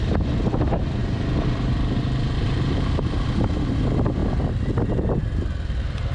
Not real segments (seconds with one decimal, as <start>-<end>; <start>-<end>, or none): 1.0-3.5